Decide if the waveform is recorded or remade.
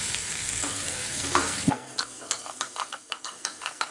remade